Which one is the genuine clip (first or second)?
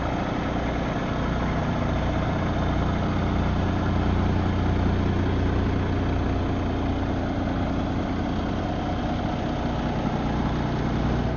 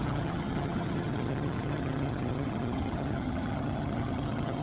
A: first